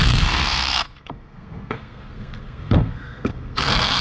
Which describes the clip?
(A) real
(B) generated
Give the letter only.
B